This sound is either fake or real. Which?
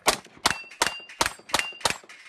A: real